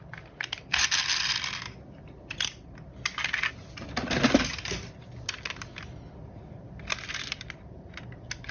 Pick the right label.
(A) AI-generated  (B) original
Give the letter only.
B